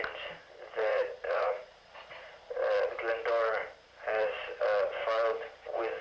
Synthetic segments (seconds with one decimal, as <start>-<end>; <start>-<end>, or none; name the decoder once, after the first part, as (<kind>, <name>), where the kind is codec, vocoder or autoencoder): 0.9-2.4 (vocoder, Vocos)